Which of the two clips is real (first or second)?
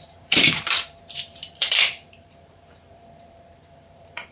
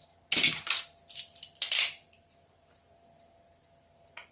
second